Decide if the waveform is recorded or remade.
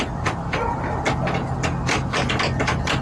recorded